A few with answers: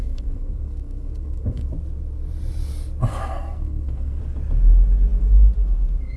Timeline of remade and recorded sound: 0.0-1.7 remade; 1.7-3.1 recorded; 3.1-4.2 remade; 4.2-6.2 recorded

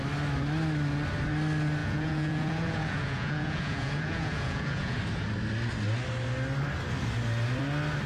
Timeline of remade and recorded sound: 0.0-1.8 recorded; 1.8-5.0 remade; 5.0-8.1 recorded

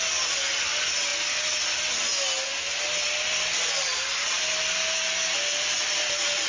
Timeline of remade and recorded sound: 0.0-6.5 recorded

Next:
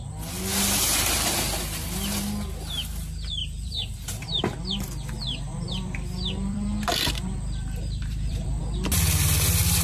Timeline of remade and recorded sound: 0.0-3.4 recorded; 3.4-4.4 remade; 4.4-5.3 recorded; 5.3-8.6 remade; 8.6-9.8 recorded

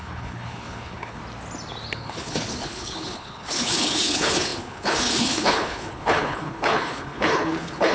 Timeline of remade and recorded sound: 0.0-1.2 remade; 1.2-1.9 recorded; 1.9-7.9 remade

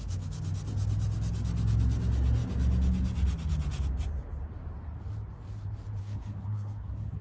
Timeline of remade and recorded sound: 0.0-6.0 recorded; 6.0-7.2 remade

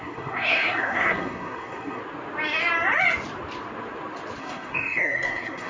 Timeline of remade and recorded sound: 0.0-2.0 remade; 2.0-4.4 recorded; 4.4-5.7 remade